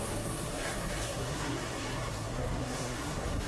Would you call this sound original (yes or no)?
no